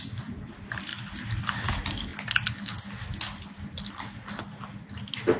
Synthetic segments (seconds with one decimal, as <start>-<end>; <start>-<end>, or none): 0.0-0.9; 1.7-2.1